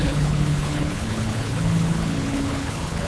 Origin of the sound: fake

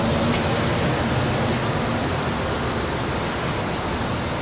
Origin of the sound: real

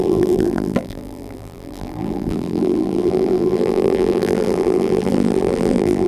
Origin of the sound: fake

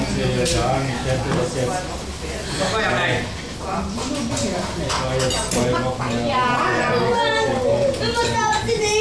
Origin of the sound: real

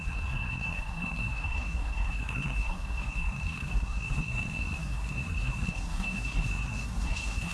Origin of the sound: fake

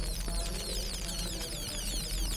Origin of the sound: real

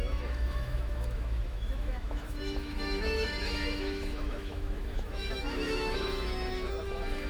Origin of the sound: fake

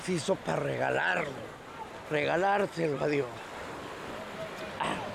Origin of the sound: real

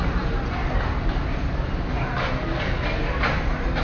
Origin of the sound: real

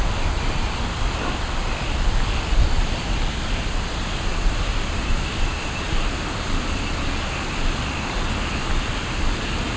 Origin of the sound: real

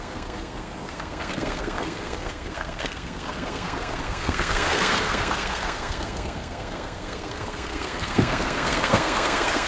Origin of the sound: fake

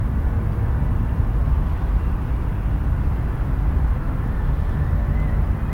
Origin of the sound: real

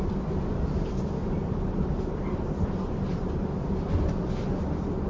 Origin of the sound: fake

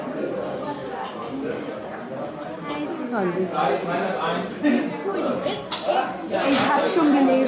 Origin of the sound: real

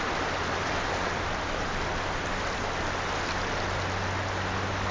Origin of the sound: real